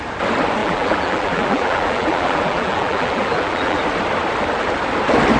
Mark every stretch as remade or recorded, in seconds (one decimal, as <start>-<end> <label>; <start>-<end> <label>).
0.0-0.6 recorded; 0.6-3.8 remade; 3.8-5.4 recorded

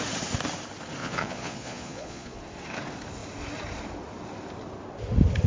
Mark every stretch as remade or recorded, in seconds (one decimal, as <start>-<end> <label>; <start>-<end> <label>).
0.0-1.0 recorded; 1.0-2.4 remade; 2.4-5.5 recorded

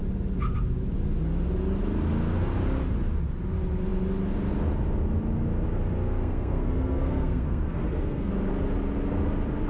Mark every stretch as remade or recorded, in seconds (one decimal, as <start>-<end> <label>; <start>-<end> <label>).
0.0-6.2 recorded; 6.2-8.3 remade; 8.3-9.7 recorded

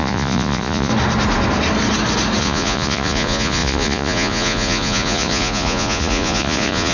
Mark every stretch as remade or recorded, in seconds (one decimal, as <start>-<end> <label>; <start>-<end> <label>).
0.0-0.9 remade; 0.9-2.4 recorded; 2.4-6.9 remade

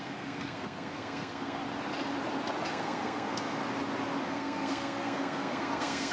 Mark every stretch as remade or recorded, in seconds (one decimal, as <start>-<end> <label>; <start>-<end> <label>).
0.0-1.6 remade; 1.6-2.7 recorded; 2.7-3.6 remade; 3.6-4.2 recorded; 4.2-6.1 remade

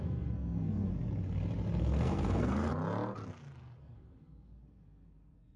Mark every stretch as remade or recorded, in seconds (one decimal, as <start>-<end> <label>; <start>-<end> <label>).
0.0-0.9 remade; 0.9-1.8 recorded; 1.8-2.7 remade; 2.7-3.8 recorded; 3.8-5.6 remade

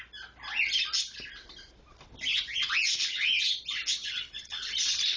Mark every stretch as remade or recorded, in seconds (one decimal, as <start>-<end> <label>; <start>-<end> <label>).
0.0-2.3 recorded; 2.3-3.6 remade; 3.6-4.0 recorded; 4.0-4.7 remade; 4.7-5.2 recorded